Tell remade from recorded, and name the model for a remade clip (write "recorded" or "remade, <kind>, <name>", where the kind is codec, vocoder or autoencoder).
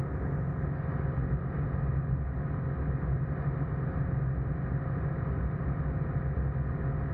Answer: recorded